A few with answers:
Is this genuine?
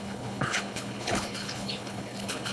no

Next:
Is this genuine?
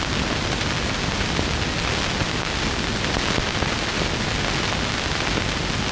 yes